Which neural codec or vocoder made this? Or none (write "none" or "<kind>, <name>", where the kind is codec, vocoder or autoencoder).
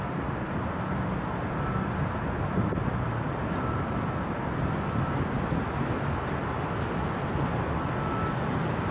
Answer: none